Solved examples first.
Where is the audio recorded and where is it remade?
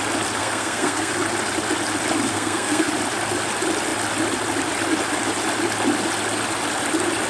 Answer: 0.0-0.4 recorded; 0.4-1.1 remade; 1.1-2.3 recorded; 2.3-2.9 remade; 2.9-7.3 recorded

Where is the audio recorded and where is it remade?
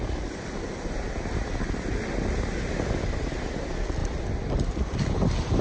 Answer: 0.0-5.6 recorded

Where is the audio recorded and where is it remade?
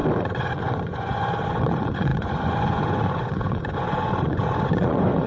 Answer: 0.0-5.3 remade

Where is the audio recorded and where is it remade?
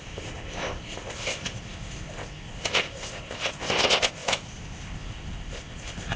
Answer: 0.0-6.2 remade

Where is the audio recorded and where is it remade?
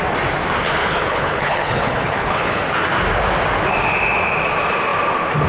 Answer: 0.0-0.8 recorded; 0.8-2.6 remade; 2.6-5.5 recorded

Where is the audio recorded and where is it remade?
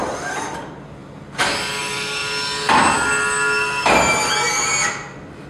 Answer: 0.0-5.5 recorded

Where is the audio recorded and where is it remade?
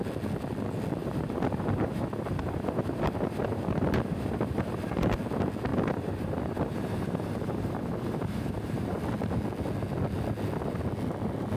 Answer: 0.0-1.0 recorded; 1.0-5.2 remade; 5.2-5.7 recorded; 5.7-9.0 remade; 9.0-11.6 recorded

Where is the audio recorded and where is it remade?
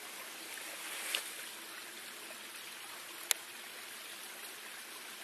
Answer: 0.0-5.2 recorded